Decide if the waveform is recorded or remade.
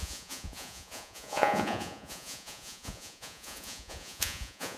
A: remade